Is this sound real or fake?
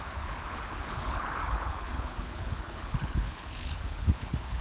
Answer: fake